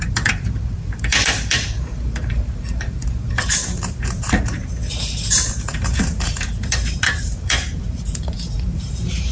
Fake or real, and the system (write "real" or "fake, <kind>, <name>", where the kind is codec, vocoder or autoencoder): fake, vocoder, BigVGAN v2